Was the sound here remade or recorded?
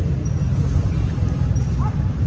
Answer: recorded